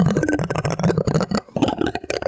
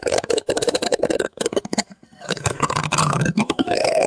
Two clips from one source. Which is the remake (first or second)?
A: second